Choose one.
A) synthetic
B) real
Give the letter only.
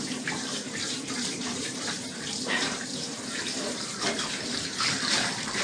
A